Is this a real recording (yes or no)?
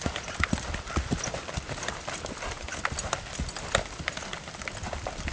yes